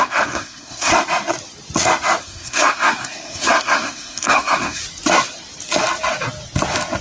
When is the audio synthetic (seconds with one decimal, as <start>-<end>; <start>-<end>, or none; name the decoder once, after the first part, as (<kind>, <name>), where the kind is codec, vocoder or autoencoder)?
0.0-0.9 (codec, SNAC); 2.2-4.8